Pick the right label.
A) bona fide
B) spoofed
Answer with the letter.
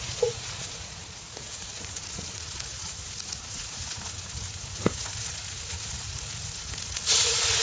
B